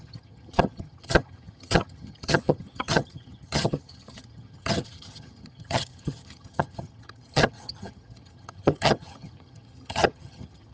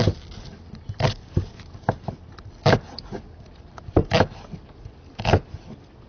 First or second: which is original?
second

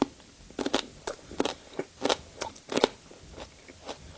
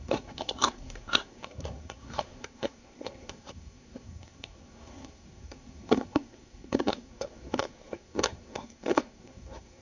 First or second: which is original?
first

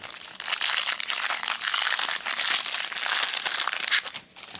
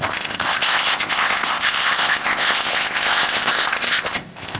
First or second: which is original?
first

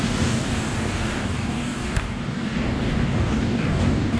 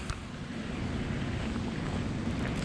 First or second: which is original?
second